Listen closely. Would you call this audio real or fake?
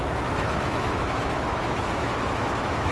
fake